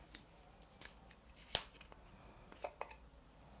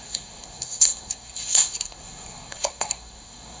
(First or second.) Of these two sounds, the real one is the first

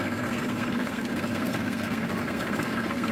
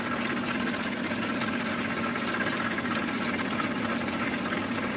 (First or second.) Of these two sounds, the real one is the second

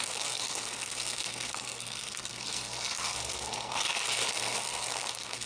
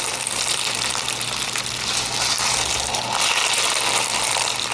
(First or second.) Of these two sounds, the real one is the second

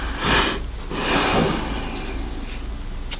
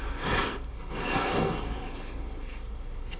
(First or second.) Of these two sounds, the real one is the first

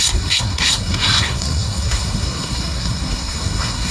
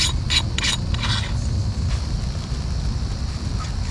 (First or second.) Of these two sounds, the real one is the second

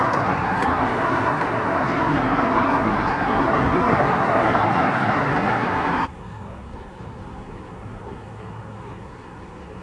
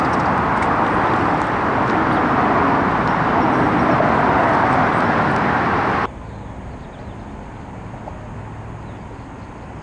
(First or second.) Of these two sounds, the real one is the second